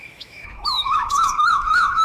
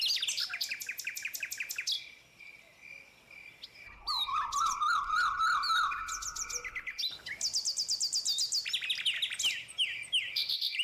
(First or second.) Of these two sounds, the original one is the second